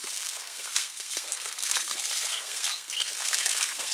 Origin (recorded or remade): remade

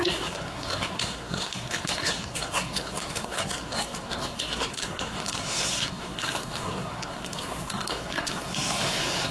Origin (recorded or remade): remade